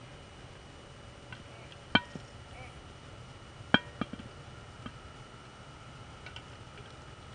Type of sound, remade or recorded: recorded